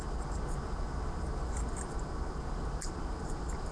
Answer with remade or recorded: recorded